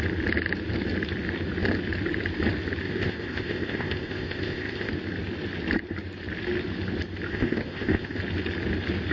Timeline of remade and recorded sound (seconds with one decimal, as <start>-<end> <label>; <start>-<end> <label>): 0.0-2.8 recorded; 2.8-4.9 remade; 4.9-7.3 recorded; 7.3-8.2 remade; 8.2-9.1 recorded